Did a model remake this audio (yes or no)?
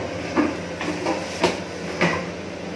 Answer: no